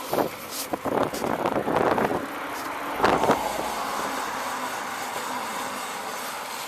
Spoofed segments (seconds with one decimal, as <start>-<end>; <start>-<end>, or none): none